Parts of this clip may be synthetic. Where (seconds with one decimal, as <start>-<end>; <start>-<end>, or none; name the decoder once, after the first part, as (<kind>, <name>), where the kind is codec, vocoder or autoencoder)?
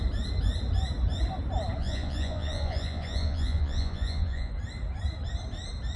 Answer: 1.8-4.5 (vocoder, Vocos)